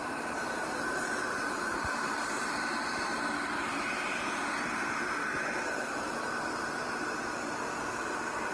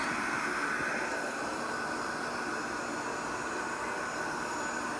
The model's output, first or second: first